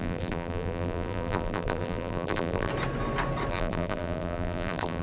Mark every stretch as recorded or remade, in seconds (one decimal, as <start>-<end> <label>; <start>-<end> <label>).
0.0-2.7 remade; 2.7-3.5 recorded; 3.5-5.0 remade